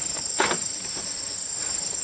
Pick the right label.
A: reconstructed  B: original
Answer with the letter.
B